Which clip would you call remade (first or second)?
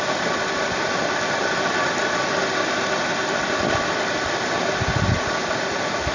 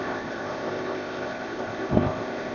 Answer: second